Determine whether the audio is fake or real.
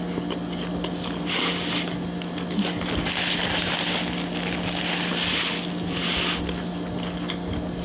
real